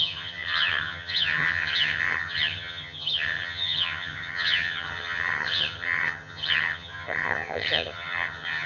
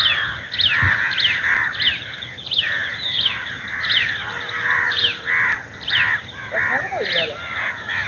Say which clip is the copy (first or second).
first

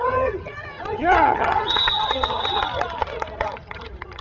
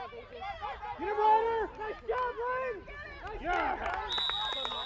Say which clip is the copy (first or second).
first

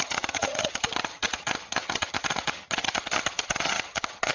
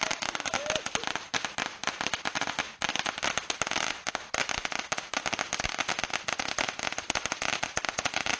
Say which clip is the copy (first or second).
first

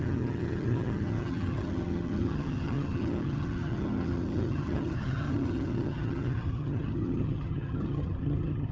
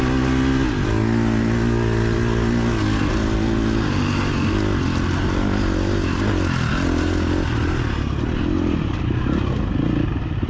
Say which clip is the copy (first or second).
first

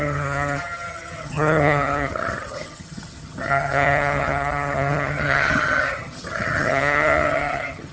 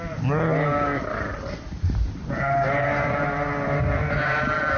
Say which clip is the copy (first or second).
first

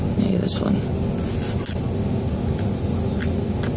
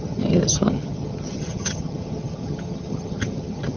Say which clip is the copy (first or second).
second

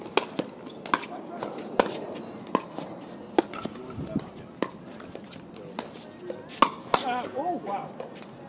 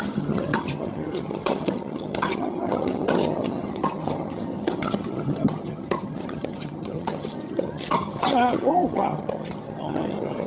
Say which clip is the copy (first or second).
second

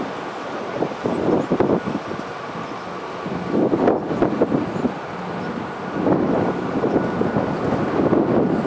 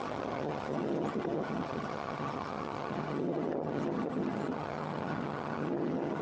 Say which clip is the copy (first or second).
second